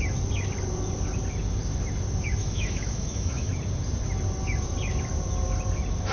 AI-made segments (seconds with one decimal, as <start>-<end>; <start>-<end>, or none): 2.4-3.5